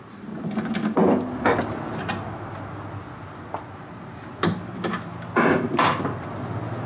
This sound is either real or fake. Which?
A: real